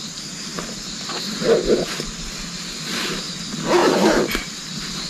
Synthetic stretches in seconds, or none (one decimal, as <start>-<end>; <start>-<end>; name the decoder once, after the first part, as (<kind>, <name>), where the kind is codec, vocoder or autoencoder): 3.8-4.5 (vocoder, BigVGAN v2)